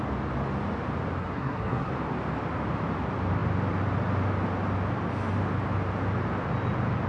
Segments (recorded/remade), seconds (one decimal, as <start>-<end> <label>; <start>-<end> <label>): 0.0-1.2 recorded; 1.2-1.9 remade; 1.9-7.1 recorded